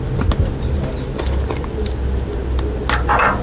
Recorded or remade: recorded